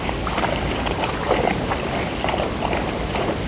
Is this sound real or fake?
real